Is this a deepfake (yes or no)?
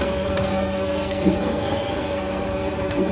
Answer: yes